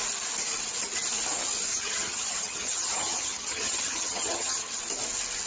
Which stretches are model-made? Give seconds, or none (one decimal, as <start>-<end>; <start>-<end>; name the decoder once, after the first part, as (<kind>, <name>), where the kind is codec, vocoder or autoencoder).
1.7-4.8 (vocoder, HiFi-GAN)